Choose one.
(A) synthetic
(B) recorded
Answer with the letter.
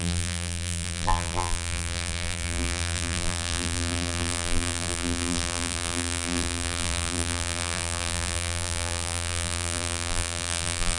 A